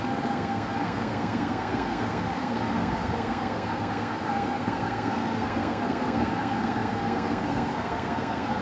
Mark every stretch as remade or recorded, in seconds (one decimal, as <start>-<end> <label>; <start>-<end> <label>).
0.0-8.6 remade